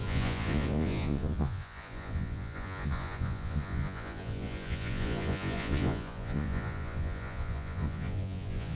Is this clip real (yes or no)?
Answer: no